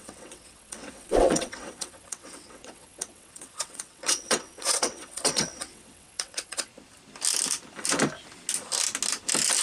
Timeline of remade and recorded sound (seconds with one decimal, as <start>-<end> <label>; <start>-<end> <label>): 0.0-6.7 remade; 6.7-9.6 recorded